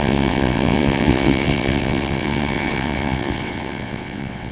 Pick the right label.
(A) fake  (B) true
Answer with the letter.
A